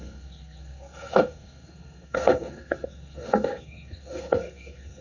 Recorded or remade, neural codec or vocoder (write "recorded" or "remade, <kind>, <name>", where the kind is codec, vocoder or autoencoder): remade, codec, SNAC